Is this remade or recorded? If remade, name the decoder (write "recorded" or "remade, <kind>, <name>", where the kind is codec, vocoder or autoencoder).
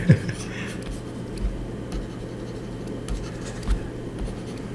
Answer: recorded